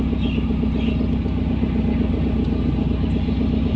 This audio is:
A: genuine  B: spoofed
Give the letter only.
A